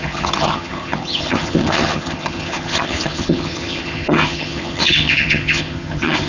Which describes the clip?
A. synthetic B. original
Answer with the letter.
A